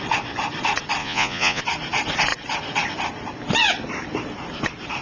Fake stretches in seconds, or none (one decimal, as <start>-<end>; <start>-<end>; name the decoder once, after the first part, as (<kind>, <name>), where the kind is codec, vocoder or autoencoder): 1.0-1.6 (vocoder, Vocos)